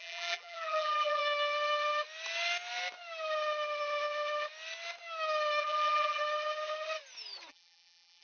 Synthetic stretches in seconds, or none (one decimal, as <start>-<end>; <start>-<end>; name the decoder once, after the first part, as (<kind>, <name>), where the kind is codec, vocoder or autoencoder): 0.0-1.2 (vocoder, BigVGAN v2); 5.6-6.2; 7.5-8.2